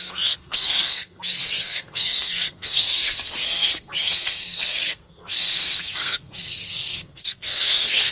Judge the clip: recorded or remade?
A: remade